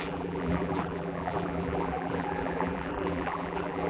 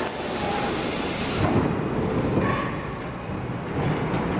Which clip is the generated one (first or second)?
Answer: first